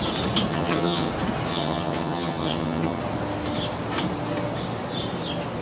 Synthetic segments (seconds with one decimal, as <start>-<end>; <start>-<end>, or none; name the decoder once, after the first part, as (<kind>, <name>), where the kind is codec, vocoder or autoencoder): 0.5-1.1 (vocoder, HiFi-GAN); 1.5-3.0